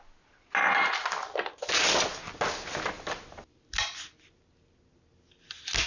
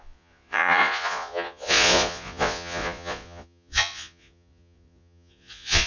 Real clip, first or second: first